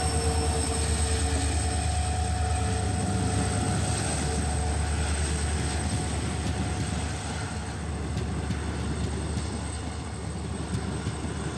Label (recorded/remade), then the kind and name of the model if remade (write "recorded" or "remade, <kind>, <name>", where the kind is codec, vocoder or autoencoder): recorded